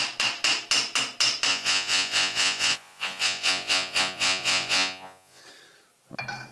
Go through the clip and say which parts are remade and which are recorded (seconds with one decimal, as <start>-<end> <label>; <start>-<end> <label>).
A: 0.0-1.5 recorded; 1.5-5.4 remade; 5.4-6.5 recorded